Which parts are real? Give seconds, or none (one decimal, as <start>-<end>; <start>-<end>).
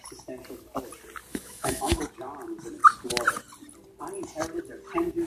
0.0-1.3; 2.0-5.3